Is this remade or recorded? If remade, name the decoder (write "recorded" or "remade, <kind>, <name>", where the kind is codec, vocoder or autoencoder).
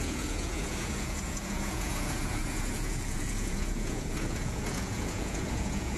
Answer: remade, vocoder, Vocos